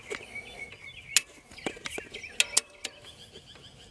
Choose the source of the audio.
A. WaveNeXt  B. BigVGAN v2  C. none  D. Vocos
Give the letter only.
C